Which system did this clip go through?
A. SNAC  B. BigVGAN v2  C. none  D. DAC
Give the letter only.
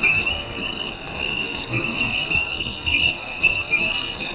A